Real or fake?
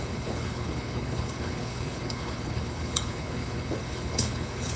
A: fake